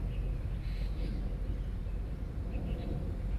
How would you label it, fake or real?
real